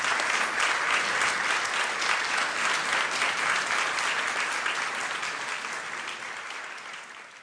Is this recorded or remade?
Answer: recorded